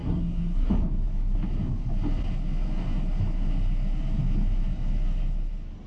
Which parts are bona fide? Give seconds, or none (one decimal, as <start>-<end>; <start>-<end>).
0.7-5.9